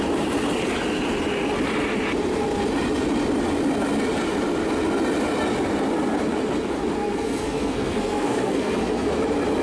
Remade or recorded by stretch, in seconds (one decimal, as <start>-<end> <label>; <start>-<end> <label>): 0.0-7.0 recorded; 7.0-9.2 remade; 9.2-9.6 recorded